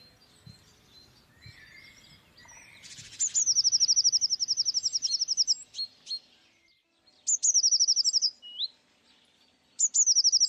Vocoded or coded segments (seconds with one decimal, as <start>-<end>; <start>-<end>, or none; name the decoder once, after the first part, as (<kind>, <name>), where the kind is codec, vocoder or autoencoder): none